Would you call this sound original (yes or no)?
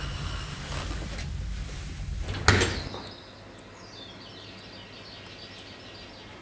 yes